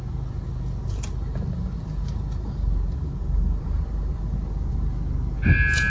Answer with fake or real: real